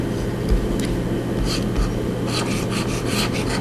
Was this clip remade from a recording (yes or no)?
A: no